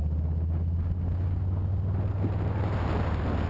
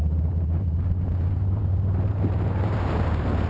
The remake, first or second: second